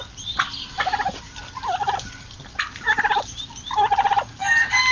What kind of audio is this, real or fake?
real